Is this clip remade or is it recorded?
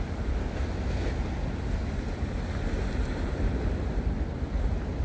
recorded